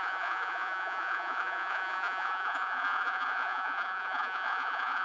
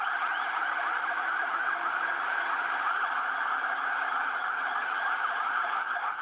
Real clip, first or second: second